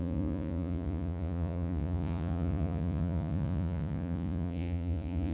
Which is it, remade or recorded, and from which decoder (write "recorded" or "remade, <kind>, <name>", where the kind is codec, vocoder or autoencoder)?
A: remade, vocoder, Vocos